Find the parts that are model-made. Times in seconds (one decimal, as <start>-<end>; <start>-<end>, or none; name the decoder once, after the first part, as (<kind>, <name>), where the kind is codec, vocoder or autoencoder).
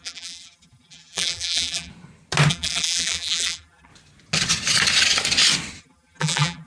0.0-1.9 (vocoder, BigVGAN v2); 2.5-3.9; 5.8-6.7